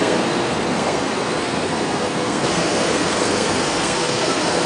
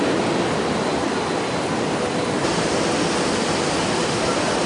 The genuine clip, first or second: second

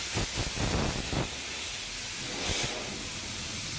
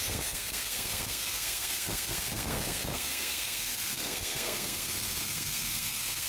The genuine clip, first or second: first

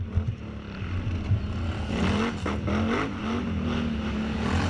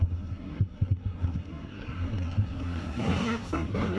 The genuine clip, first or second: first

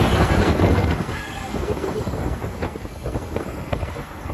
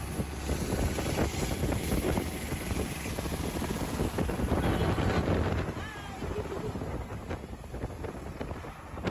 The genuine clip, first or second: second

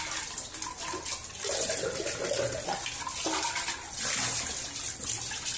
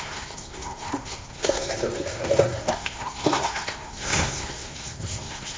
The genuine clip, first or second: first